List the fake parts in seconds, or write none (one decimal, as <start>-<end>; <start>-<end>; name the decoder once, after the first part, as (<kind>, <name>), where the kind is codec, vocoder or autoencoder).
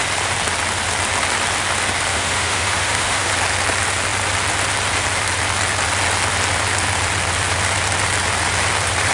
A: 2.1-3.3 (autoencoder, DAC-VAE)